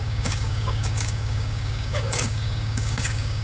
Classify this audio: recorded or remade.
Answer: remade